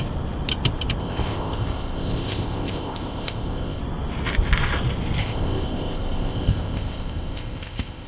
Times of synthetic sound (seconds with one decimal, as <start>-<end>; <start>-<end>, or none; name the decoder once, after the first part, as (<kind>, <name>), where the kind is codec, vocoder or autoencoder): 1.0-3.8 (codec, ZipCodec); 5.2-8.1